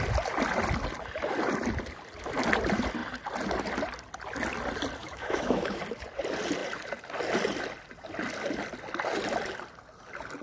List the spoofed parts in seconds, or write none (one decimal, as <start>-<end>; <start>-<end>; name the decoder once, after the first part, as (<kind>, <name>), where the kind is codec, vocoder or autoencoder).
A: 5.0-5.8 (autoencoder, DAC-VAE)